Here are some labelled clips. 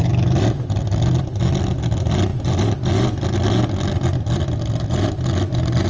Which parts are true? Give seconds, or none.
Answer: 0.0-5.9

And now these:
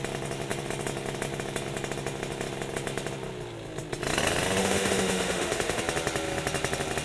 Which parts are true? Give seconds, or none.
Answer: 0.0-4.6; 5.8-7.0